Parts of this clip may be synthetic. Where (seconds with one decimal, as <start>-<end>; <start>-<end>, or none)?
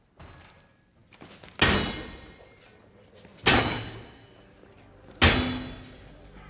none